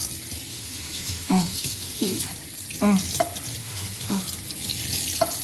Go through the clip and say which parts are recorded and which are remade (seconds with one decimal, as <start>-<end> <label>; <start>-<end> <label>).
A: 0.0-0.5 recorded; 0.5-2.2 remade; 2.2-3.6 recorded; 3.6-4.2 remade; 4.2-5.4 recorded